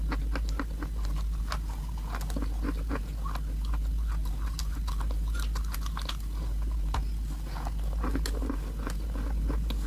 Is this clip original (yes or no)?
yes